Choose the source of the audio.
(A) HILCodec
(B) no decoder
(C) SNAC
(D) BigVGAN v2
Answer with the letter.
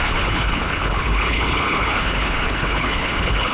A